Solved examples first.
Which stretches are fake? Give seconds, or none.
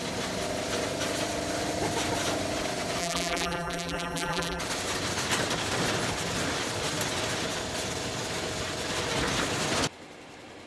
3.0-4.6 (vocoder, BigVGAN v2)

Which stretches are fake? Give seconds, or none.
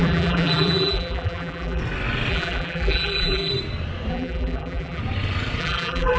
0.0-1.8 (vocoder, BigVGAN v2); 2.3-3.5; 4.1-5.0; 5.6-6.2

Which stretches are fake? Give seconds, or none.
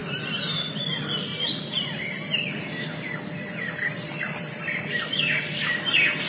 0.0-0.7 (vocoder, BigVGAN v2); 1.3-5.1